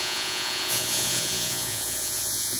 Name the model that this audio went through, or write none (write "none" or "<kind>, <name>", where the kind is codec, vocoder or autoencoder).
vocoder, Vocos